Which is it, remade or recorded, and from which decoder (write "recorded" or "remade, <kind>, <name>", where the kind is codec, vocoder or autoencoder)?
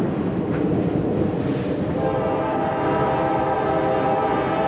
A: recorded